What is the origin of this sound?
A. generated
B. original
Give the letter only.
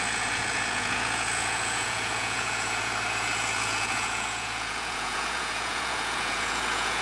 A